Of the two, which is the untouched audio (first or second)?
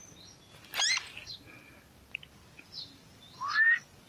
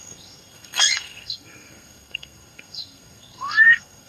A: first